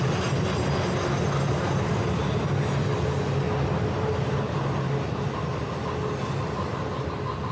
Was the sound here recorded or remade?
recorded